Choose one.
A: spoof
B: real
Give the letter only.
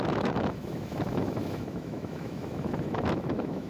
A